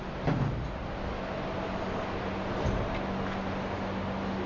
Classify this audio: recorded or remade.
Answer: recorded